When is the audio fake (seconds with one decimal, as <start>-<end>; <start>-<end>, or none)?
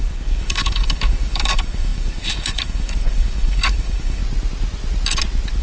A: 0.0-4.2